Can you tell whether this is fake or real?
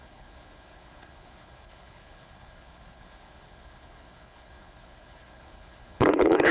fake